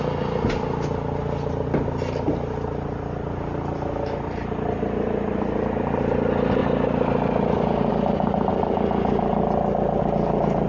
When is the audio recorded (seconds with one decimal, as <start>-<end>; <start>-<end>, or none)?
0.0-10.7